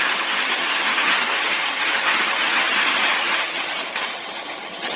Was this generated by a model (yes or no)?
yes